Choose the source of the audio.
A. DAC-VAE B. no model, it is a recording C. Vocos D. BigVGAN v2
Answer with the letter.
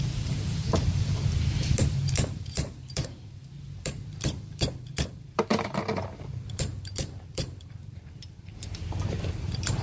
D